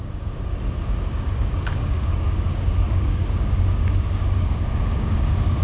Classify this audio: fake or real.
fake